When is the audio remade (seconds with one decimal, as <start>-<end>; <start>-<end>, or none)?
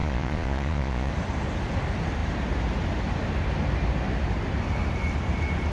0.0-1.1